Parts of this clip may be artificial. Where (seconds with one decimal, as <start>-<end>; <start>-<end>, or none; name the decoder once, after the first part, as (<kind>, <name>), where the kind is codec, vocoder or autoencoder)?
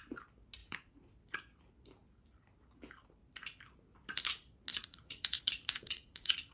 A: 0.6-1.1 (vocoder, Vocos); 4.7-6.5